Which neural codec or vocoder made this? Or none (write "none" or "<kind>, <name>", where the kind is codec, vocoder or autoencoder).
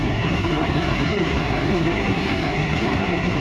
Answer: codec, SNAC